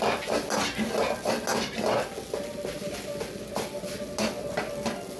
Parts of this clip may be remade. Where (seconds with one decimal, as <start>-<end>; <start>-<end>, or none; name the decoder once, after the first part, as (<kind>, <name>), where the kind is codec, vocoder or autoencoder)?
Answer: none